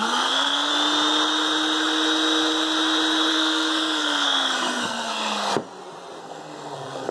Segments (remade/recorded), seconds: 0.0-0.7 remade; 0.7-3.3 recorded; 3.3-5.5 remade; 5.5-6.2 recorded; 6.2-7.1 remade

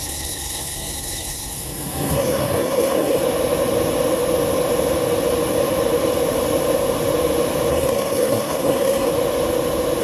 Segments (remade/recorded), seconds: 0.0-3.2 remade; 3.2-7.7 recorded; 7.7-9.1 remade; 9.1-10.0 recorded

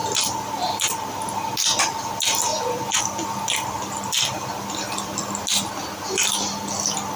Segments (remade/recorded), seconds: 0.0-7.2 recorded

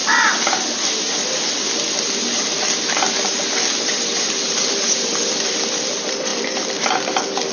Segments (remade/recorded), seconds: 0.0-7.5 recorded

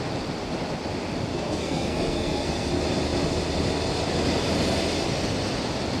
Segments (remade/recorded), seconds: 0.0-1.3 recorded; 1.3-2.7 remade; 2.7-6.0 recorded